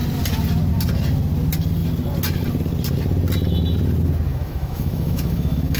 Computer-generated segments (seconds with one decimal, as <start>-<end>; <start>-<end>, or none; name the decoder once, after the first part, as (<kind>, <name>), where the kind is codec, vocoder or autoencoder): 4.3-5.8 (autoencoder, DAC-VAE)